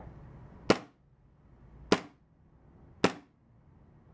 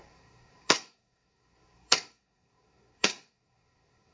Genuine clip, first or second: first